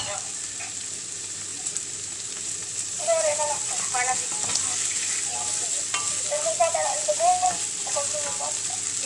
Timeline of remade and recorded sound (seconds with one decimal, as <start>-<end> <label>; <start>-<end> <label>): 0.0-1.5 recorded; 1.5-3.7 remade; 3.7-9.1 recorded